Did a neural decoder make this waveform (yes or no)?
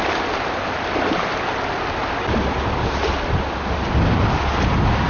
no